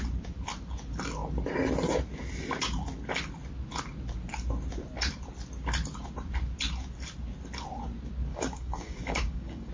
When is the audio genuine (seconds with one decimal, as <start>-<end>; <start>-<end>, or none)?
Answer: 0.0-8.3